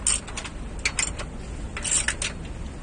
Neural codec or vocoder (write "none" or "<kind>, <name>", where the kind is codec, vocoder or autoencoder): none